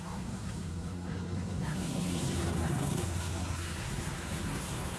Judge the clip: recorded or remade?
remade